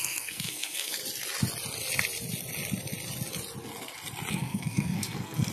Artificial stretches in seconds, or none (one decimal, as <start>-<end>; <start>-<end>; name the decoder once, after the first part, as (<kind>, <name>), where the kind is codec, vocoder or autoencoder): 0.0-1.0 (codec, SNAC); 4.3-5.5